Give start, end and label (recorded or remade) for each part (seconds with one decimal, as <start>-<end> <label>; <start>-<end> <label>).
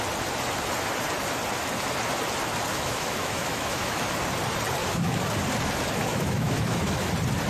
0.0-2.7 recorded; 2.7-4.0 remade; 4.0-4.8 recorded; 4.8-5.3 remade; 5.3-6.1 recorded; 6.1-7.1 remade; 7.1-7.5 recorded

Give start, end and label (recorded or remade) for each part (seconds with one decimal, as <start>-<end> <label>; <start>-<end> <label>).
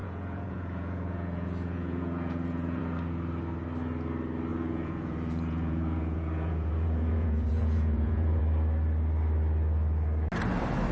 0.0-2.8 remade; 2.8-4.5 recorded; 4.5-8.4 remade; 8.4-10.9 recorded